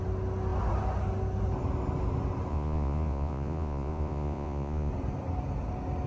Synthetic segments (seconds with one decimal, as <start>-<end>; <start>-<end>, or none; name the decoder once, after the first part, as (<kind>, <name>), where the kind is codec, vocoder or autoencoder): 2.5-4.9 (vocoder, Vocos)